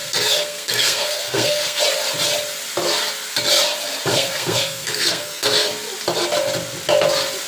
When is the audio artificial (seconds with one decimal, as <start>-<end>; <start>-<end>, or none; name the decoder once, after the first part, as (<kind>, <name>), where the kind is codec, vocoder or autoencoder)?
0.0-1.8 (codec, SNAC); 4.1-5.7